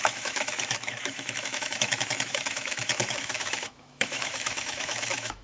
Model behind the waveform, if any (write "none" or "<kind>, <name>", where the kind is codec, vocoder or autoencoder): autoencoder, DAC-VAE